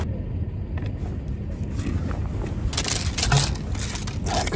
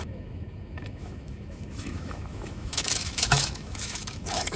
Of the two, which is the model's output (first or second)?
second